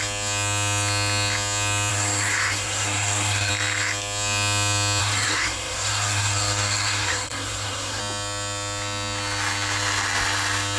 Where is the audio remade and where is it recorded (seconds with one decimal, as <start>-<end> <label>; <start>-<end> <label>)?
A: 0.0-1.9 recorded; 1.9-3.5 remade; 3.5-5.0 recorded; 5.0-8.0 remade; 8.0-10.8 recorded